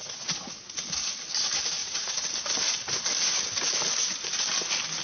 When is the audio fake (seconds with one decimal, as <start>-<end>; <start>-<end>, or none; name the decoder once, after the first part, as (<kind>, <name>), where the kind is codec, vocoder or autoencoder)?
0.0-0.7 (vocoder, Vocos); 1.8-2.3